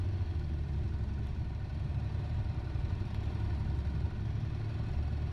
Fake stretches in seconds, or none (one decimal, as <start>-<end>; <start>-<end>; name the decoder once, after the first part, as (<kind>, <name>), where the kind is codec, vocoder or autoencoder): 1.3-3.3 (vocoder, BigVGAN v2)